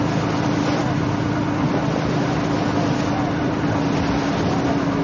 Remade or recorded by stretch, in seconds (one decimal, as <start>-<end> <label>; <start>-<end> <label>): 0.0-5.0 recorded